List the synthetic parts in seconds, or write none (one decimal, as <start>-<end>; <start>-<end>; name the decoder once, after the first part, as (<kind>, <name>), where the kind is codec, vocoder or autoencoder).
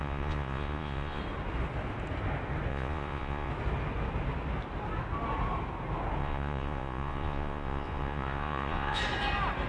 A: 0.0-1.2 (vocoder, Vocos); 2.7-3.5; 6.2-9.0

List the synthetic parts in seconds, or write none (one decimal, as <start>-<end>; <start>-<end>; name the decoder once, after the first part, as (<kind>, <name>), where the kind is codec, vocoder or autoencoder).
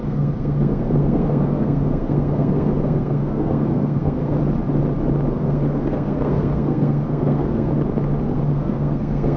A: 0.0-4.4 (codec, SNAC); 5.3-7.7; 8.2-9.4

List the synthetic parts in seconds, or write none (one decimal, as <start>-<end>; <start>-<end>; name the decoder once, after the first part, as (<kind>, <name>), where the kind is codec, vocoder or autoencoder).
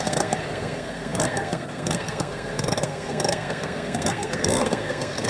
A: 0.0-5.3 (codec, SNAC)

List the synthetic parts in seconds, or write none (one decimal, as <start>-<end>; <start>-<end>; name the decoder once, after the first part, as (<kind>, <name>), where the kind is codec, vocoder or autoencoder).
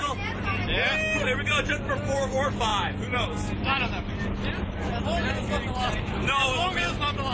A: 2.7-6.6 (vocoder, BigVGAN v2)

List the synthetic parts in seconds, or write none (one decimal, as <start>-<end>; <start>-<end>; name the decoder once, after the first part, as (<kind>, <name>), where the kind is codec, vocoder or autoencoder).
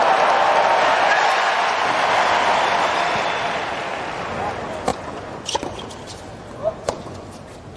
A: 0.9-1.9 (vocoder, Vocos); 4.9-5.8; 6.6-7.3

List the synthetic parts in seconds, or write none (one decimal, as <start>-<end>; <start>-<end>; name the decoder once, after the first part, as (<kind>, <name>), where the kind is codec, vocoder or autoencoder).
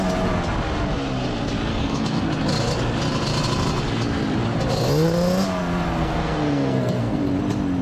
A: 1.7-2.3 (codec, SNAC); 6.0-7.2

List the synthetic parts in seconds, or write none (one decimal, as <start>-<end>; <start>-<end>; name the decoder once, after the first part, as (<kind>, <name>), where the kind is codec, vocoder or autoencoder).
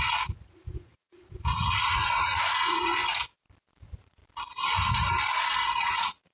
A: 0.0-3.0 (vocoder, Vocos); 3.8-4.2; 5.8-6.3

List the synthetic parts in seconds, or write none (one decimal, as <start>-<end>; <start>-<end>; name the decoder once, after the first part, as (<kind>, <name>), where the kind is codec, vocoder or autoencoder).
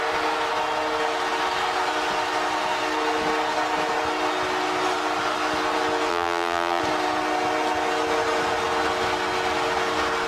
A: 6.1-6.8 (vocoder, BigVGAN v2)